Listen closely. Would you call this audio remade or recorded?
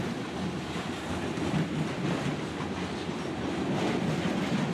recorded